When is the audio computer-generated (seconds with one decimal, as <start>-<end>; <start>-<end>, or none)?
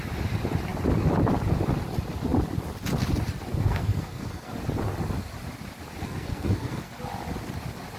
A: 3.5-4.5; 6.0-7.0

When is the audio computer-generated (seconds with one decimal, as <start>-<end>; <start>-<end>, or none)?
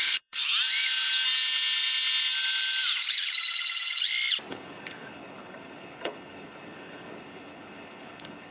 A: 0.0-0.4; 4.5-8.5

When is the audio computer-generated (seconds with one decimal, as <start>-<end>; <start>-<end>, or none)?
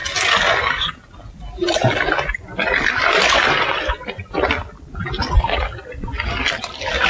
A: none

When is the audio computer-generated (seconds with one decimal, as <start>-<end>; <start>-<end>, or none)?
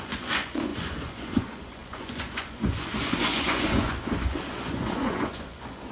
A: 0.0-5.9